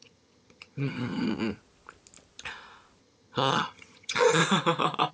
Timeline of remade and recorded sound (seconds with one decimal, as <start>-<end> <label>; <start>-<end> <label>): 0.0-1.3 remade; 1.3-3.0 recorded; 3.0-4.4 remade; 4.4-5.1 recorded